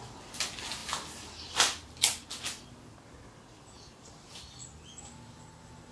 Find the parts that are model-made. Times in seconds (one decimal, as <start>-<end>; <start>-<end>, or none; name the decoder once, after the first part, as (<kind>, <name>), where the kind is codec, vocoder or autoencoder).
none